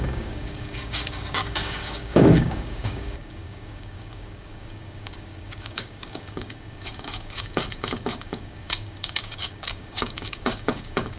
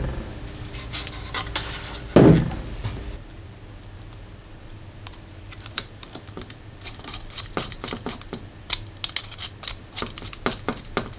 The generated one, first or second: first